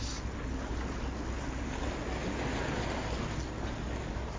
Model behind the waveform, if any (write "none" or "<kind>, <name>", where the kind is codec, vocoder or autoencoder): none